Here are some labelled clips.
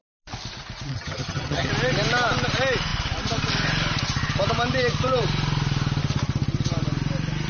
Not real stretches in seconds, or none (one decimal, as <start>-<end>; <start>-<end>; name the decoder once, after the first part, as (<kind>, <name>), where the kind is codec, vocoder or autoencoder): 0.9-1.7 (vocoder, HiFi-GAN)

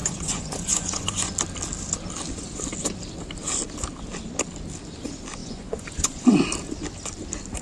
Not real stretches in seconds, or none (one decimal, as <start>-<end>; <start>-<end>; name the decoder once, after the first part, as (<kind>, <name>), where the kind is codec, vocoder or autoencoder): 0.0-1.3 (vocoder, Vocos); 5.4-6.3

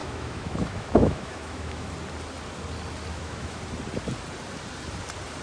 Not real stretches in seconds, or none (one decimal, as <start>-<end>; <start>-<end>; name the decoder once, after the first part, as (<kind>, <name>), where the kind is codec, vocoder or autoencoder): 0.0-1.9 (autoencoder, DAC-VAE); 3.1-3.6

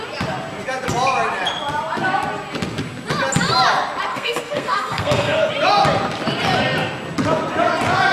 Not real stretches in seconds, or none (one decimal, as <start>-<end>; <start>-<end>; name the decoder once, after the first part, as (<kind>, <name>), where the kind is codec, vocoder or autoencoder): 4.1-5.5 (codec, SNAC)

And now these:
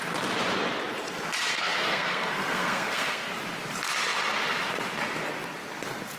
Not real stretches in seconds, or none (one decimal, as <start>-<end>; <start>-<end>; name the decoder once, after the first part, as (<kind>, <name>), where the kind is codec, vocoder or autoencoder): 1.5-3.3 (codec, SNAC)

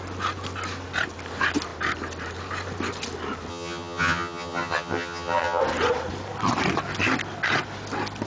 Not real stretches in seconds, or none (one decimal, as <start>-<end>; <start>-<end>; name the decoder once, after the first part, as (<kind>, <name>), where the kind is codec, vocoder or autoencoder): 3.5-5.6 (vocoder, HiFi-GAN)